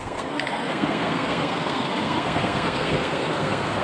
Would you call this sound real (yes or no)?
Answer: no